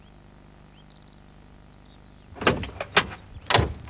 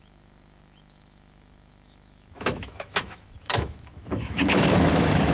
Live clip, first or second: first